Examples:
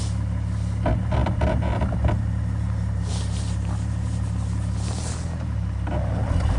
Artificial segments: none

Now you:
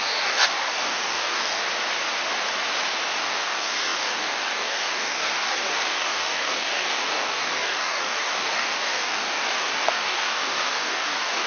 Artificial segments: 0.0-1.6 (codec, DAC); 3.2-11.5

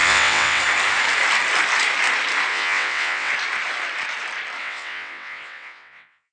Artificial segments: 0.0-0.6 (vocoder, WaveNeXt); 2.5-3.3; 4.6-6.3